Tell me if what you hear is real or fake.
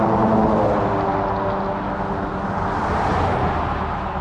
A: real